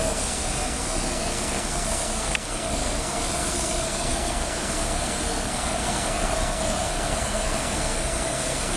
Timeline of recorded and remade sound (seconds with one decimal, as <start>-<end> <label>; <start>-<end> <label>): 0.0-8.8 remade